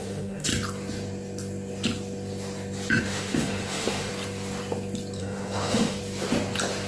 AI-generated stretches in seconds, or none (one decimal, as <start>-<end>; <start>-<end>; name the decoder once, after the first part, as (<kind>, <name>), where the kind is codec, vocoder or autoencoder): 0.0-0.5 (autoencoder, DAC-VAE); 3.0-4.1; 5.2-6.0